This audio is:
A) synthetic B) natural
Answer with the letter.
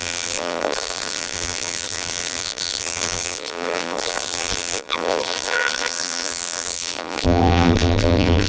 A